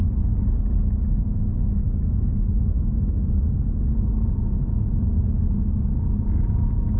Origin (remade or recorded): recorded